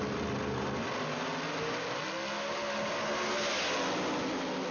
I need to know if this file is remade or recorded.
recorded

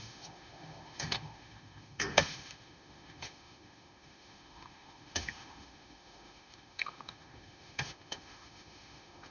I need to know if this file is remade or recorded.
remade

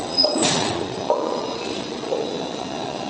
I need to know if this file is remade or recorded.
remade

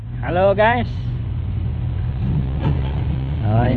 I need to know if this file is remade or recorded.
remade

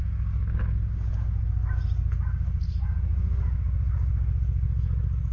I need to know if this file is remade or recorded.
recorded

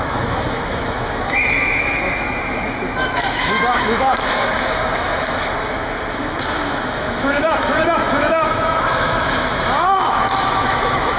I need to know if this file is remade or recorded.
remade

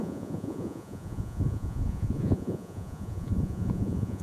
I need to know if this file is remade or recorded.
remade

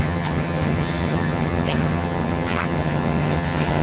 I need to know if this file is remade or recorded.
remade